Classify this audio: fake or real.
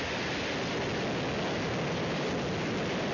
real